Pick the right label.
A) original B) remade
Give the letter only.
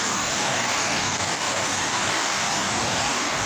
B